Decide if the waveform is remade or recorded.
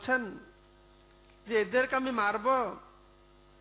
recorded